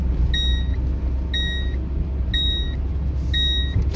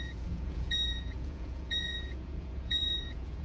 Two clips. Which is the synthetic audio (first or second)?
second